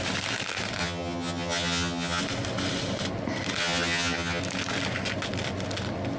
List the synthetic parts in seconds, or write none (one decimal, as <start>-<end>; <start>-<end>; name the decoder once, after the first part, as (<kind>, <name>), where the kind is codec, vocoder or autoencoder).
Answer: 0.8-2.2 (vocoder, HiFi-GAN); 3.6-4.4